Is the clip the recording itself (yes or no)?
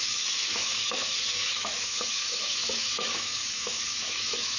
no